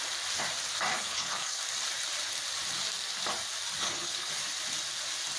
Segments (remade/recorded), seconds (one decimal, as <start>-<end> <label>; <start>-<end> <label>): 0.0-0.9 recorded; 0.9-1.6 remade; 1.6-3.8 recorded; 3.8-4.3 remade; 4.3-5.4 recorded